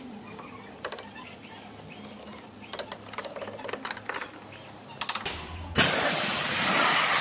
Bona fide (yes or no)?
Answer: yes